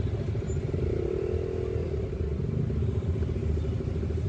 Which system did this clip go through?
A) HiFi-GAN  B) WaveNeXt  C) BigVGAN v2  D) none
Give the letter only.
D